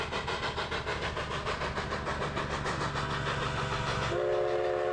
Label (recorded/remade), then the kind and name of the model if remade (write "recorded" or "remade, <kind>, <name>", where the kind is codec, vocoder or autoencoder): recorded